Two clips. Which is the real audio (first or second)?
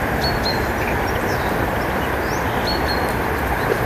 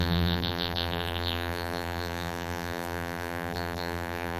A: first